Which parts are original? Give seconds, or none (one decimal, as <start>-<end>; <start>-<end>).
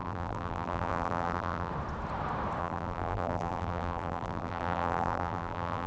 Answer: 1.7-2.6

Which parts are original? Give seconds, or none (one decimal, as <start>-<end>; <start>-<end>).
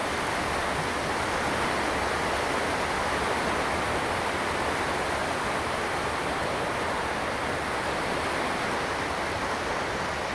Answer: 0.0-10.3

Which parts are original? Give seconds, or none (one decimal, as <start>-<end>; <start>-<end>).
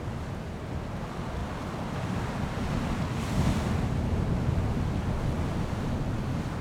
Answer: 0.0-6.6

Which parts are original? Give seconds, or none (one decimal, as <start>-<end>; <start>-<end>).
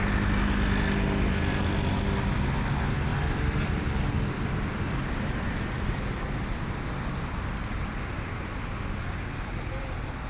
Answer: 0.0-3.1; 8.0-10.3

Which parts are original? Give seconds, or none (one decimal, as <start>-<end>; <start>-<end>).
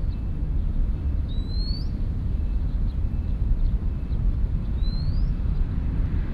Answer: 0.0-0.7